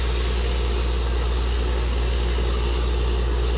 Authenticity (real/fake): real